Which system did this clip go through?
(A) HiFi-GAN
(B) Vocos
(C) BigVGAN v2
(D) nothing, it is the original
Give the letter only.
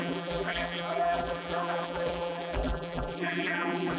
C